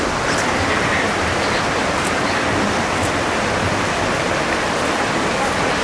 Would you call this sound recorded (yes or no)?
yes